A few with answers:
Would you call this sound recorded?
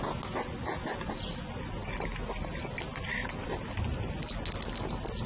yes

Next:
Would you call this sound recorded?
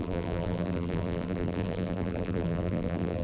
no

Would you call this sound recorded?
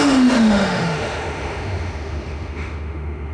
no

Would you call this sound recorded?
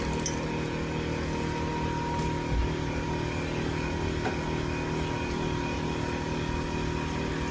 yes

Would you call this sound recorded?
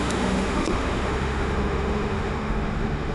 no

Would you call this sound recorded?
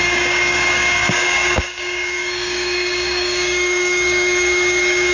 no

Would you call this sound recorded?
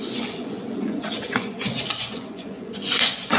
no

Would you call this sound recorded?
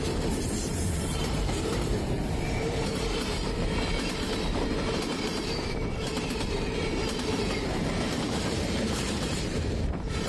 no